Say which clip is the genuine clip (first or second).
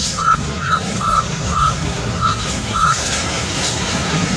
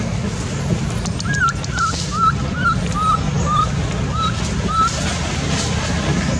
second